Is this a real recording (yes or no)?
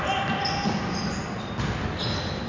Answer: yes